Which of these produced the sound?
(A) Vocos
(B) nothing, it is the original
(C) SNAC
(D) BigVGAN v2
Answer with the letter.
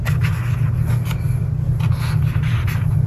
B